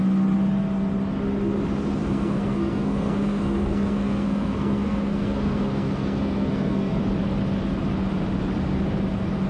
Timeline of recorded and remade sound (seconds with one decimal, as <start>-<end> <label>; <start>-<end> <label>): 0.0-2.0 recorded; 2.0-7.0 remade; 7.0-9.5 recorded